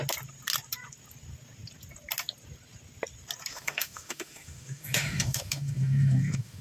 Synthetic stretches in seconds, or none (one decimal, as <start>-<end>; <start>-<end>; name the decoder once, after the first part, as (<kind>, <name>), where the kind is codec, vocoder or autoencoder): 3.5-6.6 (autoencoder, DAC-VAE)